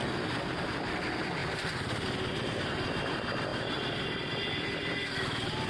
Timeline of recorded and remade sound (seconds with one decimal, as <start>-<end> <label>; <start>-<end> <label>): 0.0-5.7 recorded